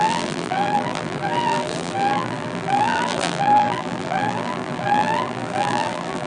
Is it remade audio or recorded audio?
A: remade